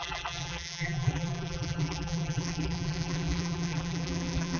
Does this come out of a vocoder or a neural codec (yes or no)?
yes